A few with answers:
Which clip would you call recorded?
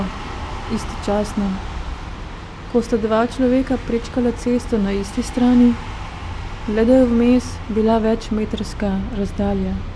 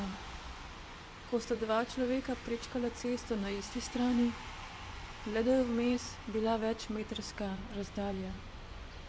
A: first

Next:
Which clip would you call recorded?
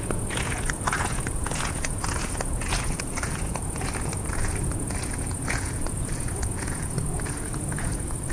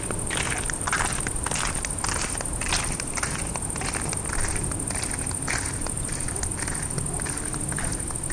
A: second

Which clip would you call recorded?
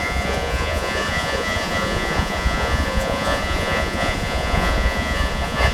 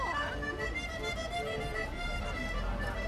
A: second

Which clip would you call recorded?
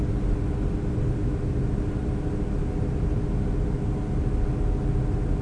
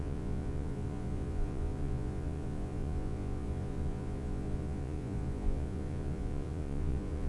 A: first